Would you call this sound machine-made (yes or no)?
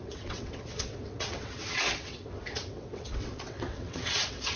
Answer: yes